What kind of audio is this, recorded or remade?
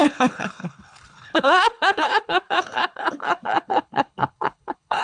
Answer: remade